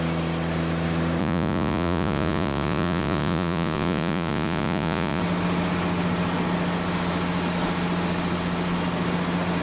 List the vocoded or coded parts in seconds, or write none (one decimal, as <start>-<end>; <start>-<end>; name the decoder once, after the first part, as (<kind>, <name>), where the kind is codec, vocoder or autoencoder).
1.2-5.2 (vocoder, Vocos)